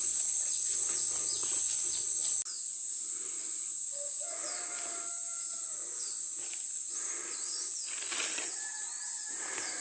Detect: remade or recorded recorded